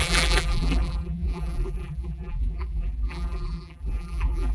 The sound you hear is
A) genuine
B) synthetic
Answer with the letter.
B